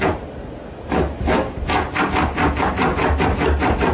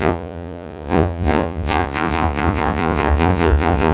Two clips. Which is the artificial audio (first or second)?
second